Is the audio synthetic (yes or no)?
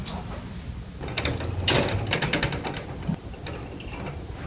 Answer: no